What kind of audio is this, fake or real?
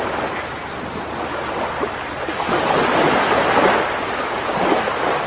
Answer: real